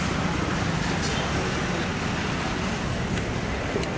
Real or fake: real